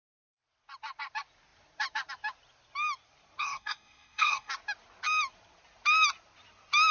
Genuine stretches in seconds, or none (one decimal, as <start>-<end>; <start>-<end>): 0.0-3.4; 4.5-6.9